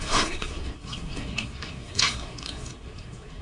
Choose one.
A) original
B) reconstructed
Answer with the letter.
B